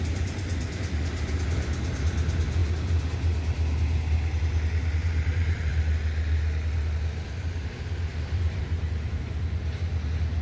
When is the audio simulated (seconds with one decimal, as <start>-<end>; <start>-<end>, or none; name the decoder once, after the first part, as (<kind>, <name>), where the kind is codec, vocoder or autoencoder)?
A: 5.0-5.7 (vocoder, BigVGAN v2); 8.1-8.6